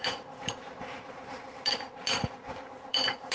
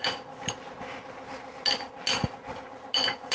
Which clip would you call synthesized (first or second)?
first